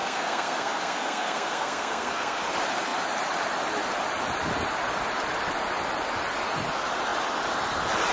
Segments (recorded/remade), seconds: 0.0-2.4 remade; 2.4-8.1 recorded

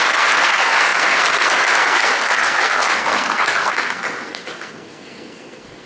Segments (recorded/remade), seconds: 0.0-5.9 remade

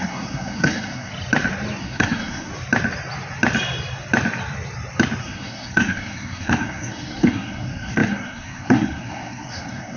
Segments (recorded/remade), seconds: 0.0-1.1 remade; 1.1-1.8 recorded; 1.8-2.5 remade; 2.5-5.2 recorded; 5.2-10.0 remade

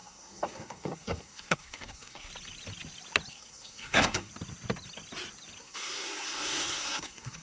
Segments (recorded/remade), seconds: 0.0-2.3 remade; 2.3-3.3 recorded; 3.3-4.3 remade; 4.3-5.6 recorded; 5.6-7.4 remade